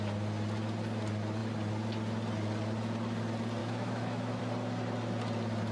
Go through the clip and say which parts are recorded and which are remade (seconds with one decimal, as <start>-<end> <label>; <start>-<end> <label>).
0.0-3.6 recorded; 3.6-4.4 remade; 4.4-5.7 recorded